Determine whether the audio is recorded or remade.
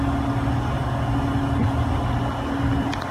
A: recorded